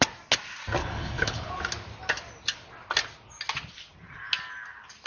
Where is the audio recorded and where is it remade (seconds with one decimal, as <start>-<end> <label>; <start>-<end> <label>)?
0.0-0.8 recorded; 0.8-1.5 remade; 1.5-5.1 recorded